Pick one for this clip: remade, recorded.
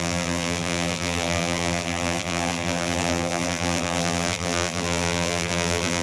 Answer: remade